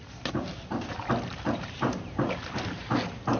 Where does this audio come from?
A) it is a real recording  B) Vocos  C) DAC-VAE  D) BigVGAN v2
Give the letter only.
A